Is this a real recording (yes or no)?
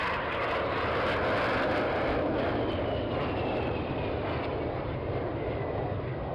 yes